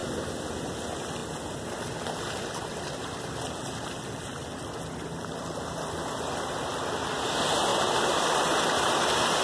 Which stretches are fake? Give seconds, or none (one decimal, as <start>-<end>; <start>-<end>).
7.7-8.4